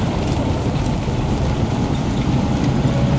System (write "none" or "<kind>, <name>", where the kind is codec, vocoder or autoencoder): none